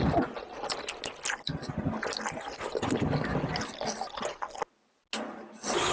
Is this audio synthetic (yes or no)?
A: no